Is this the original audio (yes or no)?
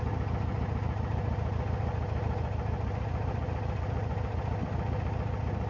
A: yes